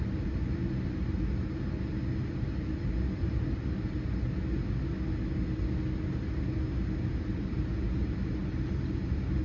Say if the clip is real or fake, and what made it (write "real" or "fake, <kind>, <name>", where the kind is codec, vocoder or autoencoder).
real